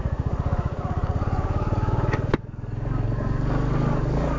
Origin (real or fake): fake